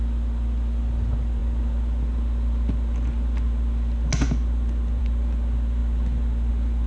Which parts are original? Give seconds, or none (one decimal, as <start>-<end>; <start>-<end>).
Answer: 0.0-6.9